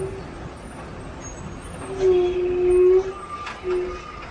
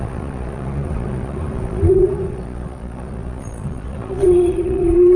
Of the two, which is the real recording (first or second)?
first